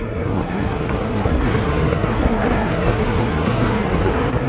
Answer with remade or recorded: remade